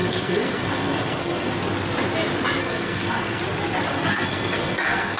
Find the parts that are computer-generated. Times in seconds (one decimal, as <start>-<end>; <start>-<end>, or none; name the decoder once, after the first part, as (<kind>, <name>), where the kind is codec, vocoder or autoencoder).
0.0-1.5 (codec, SNAC); 2.6-3.4; 3.9-5.2